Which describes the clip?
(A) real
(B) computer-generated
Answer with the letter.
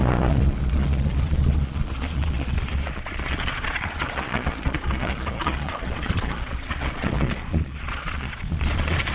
B